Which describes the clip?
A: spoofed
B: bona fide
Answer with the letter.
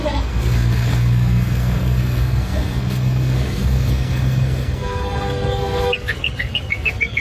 A